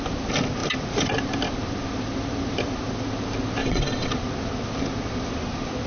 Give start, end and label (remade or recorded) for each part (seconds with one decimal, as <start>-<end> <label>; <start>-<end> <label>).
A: 0.0-3.6 recorded; 3.6-4.1 remade; 4.1-5.9 recorded